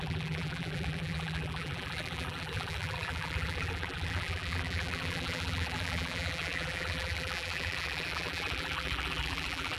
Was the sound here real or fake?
fake